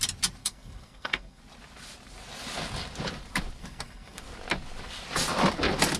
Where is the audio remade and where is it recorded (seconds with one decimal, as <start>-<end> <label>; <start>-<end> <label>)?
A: 0.0-0.4 recorded; 0.4-1.4 remade; 1.4-3.6 recorded; 3.6-4.2 remade; 4.2-6.0 recorded

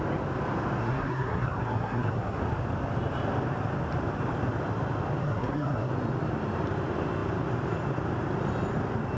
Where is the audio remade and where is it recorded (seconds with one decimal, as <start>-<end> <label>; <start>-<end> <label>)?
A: 0.0-0.8 recorded; 0.8-2.4 remade; 2.4-5.2 recorded; 5.2-5.9 remade; 5.9-9.2 recorded